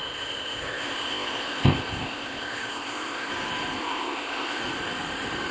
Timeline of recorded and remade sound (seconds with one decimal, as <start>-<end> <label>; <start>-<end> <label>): 0.0-3.3 remade; 3.3-3.8 recorded; 3.8-4.6 remade; 4.6-5.5 recorded

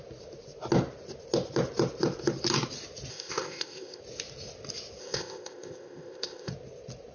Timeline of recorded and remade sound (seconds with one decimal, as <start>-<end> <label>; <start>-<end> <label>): 0.0-3.1 recorded; 3.1-4.0 remade; 4.0-5.0 recorded; 5.0-6.5 remade; 6.5-7.1 recorded

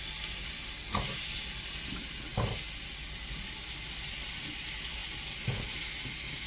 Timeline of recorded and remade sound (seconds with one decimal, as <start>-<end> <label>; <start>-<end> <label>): 0.0-6.5 recorded

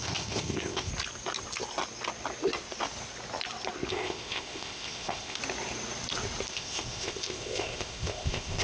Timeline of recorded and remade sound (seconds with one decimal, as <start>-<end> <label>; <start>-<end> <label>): 0.0-0.9 remade; 0.9-3.9 recorded; 3.9-5.4 remade; 5.4-6.5 recorded; 6.5-8.6 remade

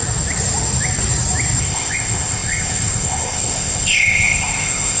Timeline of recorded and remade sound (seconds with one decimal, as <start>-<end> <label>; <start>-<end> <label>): 0.0-1.6 recorded; 1.6-5.0 remade

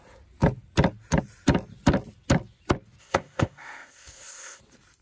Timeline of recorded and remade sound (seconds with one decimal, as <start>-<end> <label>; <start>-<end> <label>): 0.0-3.0 recorded; 3.0-4.6 remade; 4.6-5.0 recorded